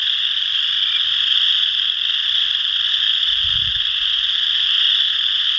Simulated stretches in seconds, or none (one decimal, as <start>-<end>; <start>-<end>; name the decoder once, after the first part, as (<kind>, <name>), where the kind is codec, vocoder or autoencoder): none